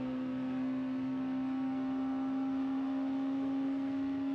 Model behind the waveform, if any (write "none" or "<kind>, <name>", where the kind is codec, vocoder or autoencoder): codec, SNAC